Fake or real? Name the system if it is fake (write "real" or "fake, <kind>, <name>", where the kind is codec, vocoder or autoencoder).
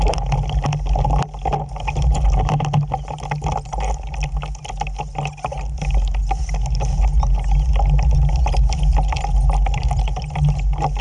real